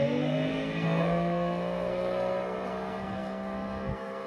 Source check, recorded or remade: remade